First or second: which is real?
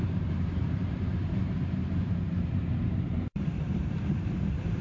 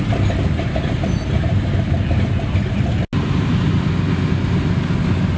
second